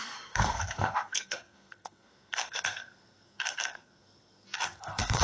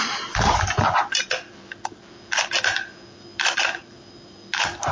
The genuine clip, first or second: second